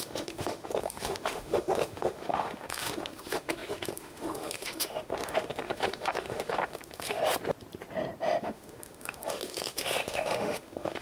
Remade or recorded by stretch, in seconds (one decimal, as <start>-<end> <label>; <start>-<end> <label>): 0.0-7.2 remade; 7.2-8.4 recorded; 8.4-11.0 remade